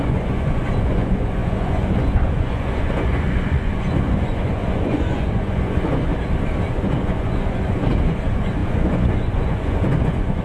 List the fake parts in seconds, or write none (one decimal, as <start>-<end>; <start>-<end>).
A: 0.0-6.1; 6.7-10.4